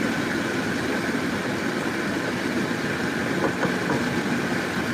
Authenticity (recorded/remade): recorded